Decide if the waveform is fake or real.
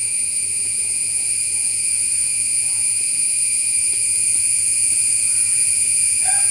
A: fake